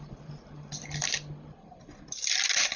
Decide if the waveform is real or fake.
real